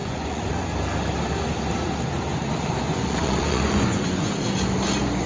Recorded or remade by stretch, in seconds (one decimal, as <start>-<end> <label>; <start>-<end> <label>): 0.0-0.6 remade; 0.6-2.9 recorded; 2.9-4.3 remade; 4.3-5.3 recorded